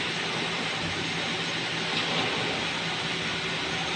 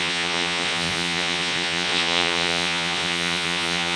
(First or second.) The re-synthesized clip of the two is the second